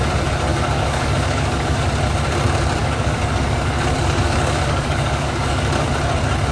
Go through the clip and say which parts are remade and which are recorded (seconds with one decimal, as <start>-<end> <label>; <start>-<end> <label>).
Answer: 0.0-0.5 recorded; 0.5-1.9 remade; 1.9-2.8 recorded; 2.8-5.9 remade; 5.9-6.5 recorded